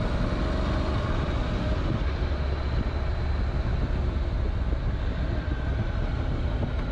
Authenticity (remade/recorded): recorded